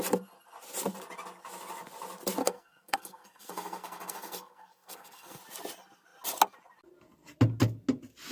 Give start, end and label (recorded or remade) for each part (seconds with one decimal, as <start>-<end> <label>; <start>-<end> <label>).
0.0-2.4 recorded; 2.4-5.4 remade; 5.4-8.3 recorded